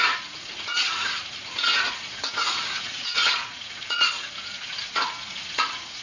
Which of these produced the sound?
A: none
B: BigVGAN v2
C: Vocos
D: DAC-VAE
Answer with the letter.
C